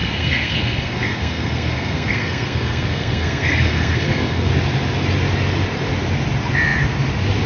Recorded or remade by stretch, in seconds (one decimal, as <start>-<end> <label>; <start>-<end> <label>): 0.0-4.5 remade; 4.5-7.5 recorded